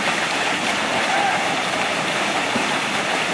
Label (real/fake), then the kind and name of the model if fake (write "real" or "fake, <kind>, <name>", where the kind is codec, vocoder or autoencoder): fake, vocoder, BigVGAN v2